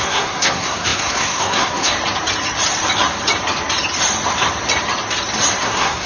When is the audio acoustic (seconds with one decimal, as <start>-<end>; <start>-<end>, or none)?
1.9-5.6

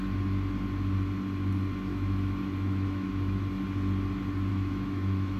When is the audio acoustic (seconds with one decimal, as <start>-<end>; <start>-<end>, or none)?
0.0-1.9; 3.4-4.5